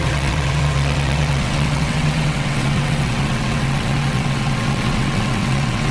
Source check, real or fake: fake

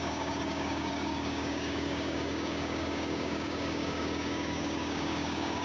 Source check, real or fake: fake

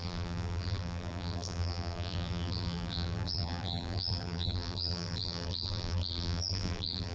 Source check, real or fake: fake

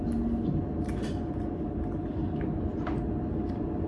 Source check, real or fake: real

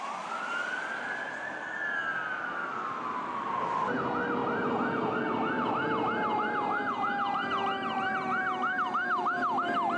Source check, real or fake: real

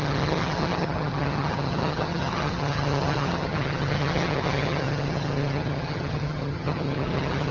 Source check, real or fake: fake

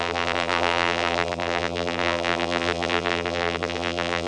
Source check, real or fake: fake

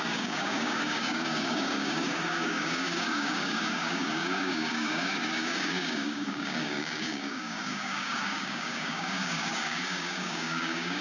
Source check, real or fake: fake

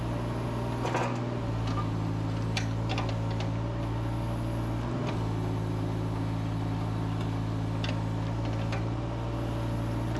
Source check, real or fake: real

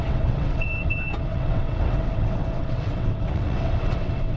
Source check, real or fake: fake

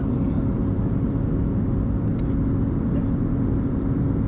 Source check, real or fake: real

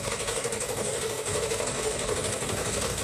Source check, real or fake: fake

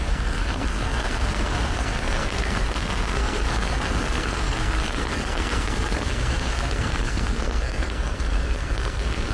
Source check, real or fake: fake